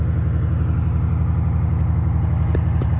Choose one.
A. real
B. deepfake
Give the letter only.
A